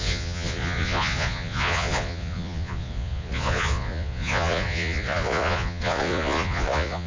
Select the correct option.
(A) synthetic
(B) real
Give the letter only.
A